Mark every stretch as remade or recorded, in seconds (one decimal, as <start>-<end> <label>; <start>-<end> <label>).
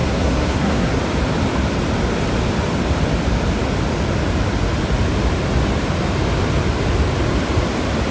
0.0-1.0 remade; 1.0-8.1 recorded